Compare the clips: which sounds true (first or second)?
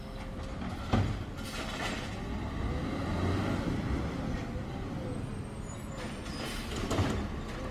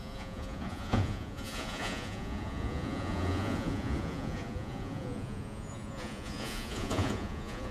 first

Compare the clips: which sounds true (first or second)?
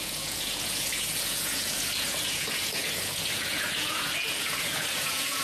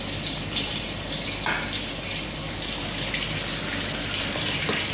second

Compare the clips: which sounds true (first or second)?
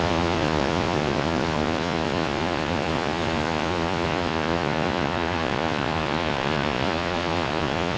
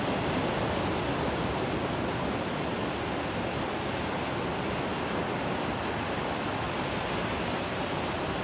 second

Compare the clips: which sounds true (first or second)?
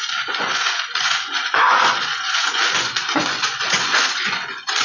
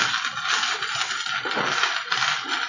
second